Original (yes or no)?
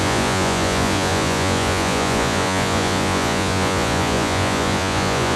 no